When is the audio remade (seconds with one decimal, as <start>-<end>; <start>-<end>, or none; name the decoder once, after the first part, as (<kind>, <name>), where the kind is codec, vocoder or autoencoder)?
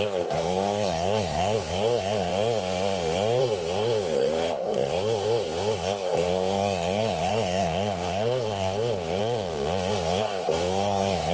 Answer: 0.0-2.3 (codec, SNAC); 3.4-9.2; 9.9-11.3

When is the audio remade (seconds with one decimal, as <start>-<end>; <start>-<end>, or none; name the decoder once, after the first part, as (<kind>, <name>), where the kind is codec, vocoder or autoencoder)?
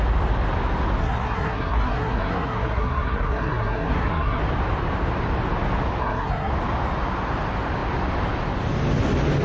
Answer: 1.0-4.4 (codec, SNAC); 6.0-6.5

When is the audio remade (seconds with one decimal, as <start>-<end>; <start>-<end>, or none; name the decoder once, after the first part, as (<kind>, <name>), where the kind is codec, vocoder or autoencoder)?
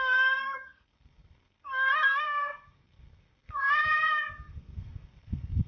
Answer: 0.0-5.7 (codec, SNAC)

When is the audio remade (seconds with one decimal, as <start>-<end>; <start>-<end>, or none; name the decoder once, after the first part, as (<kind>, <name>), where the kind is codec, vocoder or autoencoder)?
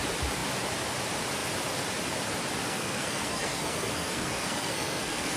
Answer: 2.6-5.4 (codec, SNAC)